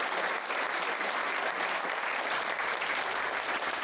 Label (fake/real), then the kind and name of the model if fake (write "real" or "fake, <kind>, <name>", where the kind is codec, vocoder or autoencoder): real